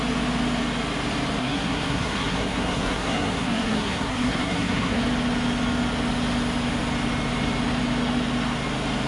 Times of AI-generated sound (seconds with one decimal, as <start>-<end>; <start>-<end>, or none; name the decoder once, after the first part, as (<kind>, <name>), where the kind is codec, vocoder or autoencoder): 1.4-5.0 (codec, SNAC)